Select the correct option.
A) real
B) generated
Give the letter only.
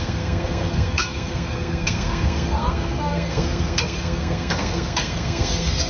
B